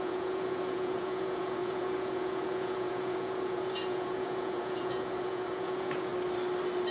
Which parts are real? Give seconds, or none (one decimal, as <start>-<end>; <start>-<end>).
6.1-6.9